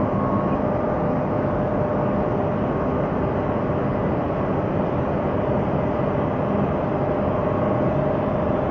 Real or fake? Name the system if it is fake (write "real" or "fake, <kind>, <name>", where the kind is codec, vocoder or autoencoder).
real